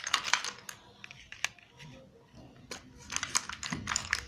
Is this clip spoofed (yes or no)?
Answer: no